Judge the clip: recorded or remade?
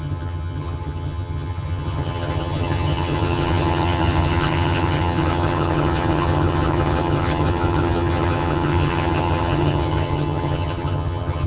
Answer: remade